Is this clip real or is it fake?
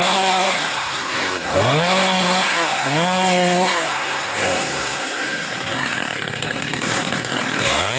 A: fake